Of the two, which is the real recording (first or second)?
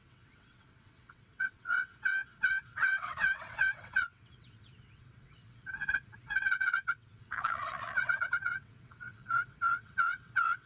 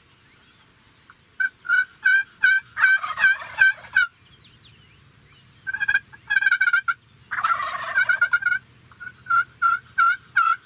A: second